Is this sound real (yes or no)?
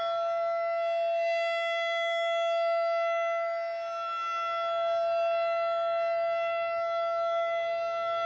yes